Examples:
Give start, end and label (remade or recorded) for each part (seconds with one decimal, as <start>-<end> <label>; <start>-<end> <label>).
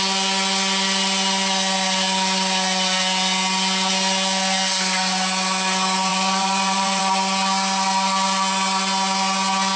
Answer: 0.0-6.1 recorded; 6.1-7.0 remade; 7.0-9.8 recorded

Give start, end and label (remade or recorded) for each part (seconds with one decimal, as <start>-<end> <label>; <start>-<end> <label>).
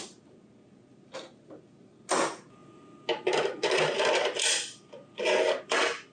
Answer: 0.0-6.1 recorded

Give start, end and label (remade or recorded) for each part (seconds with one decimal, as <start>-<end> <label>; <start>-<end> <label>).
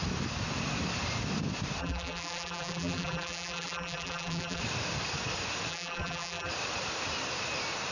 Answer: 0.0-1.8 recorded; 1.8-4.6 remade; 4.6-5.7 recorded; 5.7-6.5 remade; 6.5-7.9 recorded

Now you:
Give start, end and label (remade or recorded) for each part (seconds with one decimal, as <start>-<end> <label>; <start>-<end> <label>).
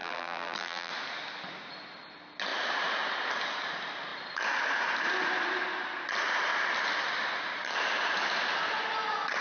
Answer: 0.0-0.9 remade; 0.9-9.4 recorded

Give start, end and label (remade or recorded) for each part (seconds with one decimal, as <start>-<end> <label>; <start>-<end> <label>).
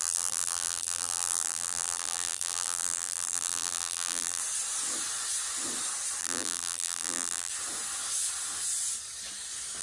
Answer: 0.0-4.4 remade; 4.4-6.2 recorded; 6.2-7.5 remade; 7.5-9.8 recorded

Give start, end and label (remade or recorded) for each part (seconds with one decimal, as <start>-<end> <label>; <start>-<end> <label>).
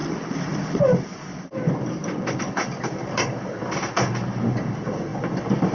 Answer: 0.0-2.0 recorded; 2.0-3.4 remade; 3.4-5.7 recorded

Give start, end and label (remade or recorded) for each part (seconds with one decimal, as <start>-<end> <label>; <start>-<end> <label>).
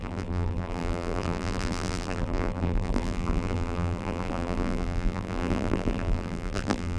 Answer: 0.0-7.0 remade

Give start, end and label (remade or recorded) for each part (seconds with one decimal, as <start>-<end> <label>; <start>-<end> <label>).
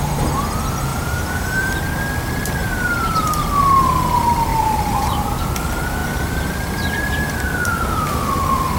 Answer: 0.0-0.9 recorded; 0.9-1.7 remade; 1.7-2.6 recorded; 2.6-3.4 remade; 3.4-4.5 recorded; 4.5-5.2 remade; 5.2-6.0 recorded; 6.0-8.1 remade; 8.1-8.8 recorded